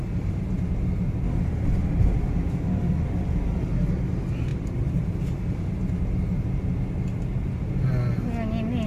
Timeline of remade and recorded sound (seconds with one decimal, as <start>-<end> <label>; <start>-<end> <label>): 0.0-4.5 recorded; 4.5-5.6 remade; 5.6-8.9 recorded